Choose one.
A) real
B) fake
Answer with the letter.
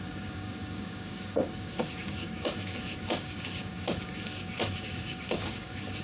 B